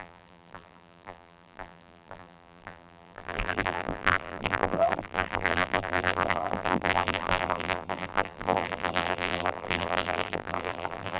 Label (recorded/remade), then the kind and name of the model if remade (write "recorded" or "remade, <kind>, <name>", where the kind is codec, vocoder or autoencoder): remade, vocoder, BigVGAN v2